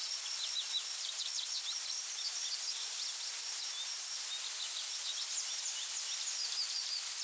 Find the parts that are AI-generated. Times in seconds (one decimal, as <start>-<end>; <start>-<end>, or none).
0.0-1.2; 2.4-3.6